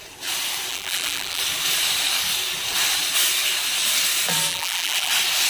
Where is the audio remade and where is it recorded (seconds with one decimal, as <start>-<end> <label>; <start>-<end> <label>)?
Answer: 0.0-0.7 recorded; 0.7-1.4 remade; 1.4-4.5 recorded; 4.5-5.1 remade; 5.1-5.5 recorded